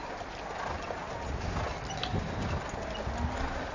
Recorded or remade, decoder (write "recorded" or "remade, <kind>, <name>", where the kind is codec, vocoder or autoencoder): recorded